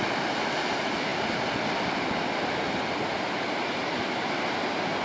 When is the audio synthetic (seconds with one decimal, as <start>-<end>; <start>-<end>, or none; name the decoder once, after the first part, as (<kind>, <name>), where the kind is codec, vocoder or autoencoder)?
none